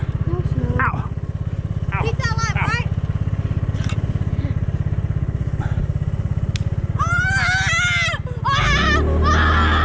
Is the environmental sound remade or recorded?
recorded